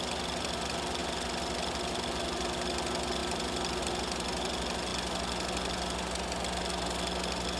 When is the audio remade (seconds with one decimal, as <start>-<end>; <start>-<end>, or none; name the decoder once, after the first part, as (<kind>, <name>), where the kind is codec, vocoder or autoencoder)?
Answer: 3.2-3.8 (vocoder, BigVGAN v2)